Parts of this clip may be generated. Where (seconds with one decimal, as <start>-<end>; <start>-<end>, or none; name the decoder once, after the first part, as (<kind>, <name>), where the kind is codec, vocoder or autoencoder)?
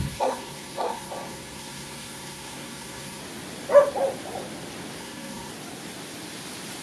0.0-3.2 (codec, SNAC); 5.0-5.5